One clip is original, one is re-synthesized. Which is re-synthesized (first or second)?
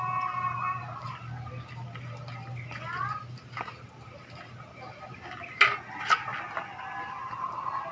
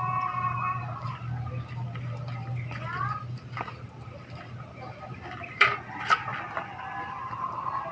second